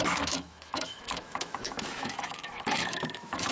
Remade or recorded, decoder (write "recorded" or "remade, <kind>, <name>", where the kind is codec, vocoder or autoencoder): remade, autoencoder, DAC-VAE